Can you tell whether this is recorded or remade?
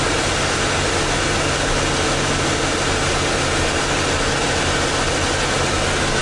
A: recorded